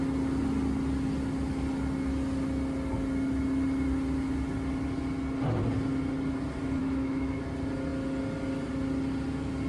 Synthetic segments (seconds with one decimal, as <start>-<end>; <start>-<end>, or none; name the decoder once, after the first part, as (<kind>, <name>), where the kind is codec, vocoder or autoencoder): 6.8-7.4 (autoencoder, DAC-VAE)